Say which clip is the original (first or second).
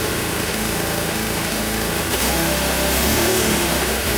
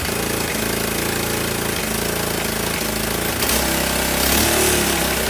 second